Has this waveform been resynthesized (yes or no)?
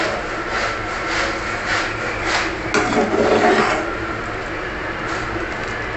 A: no